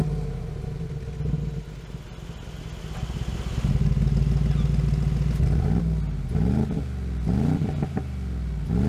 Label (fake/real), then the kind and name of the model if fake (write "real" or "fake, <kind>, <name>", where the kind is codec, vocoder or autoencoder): real